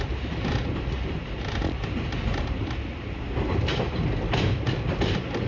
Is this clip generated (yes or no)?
no